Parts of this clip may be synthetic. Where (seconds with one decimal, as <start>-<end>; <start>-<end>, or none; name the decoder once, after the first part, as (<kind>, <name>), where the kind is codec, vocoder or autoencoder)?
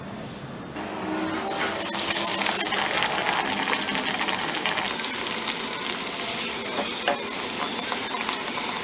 none